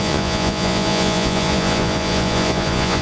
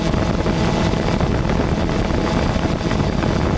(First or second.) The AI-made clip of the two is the first